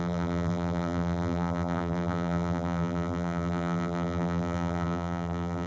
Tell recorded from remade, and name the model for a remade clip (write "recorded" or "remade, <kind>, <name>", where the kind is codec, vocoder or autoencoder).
remade, vocoder, BigVGAN v2